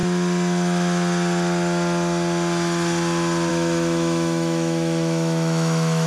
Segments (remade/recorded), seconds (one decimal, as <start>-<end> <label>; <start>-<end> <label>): 0.0-3.5 recorded; 3.5-6.1 remade